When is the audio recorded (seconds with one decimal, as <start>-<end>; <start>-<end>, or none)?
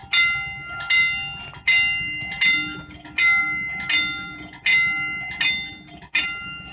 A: 0.0-6.7